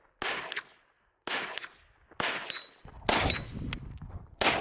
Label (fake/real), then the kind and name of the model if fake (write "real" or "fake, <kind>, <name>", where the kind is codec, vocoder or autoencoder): real